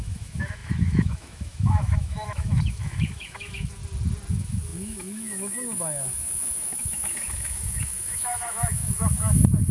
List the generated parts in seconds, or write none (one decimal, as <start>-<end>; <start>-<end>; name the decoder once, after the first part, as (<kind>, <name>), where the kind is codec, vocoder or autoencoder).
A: 0.0-3.8 (autoencoder, DAC-VAE); 4.3-9.7